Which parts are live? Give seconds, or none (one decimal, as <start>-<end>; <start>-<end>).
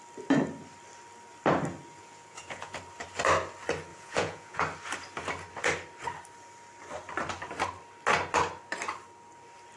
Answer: 0.0-2.0; 2.8-3.9; 4.6-9.8